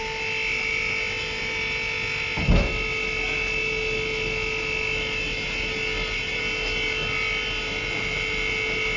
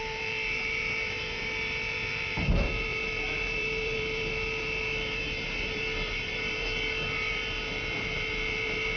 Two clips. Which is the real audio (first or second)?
first